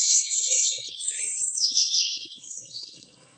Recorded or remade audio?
remade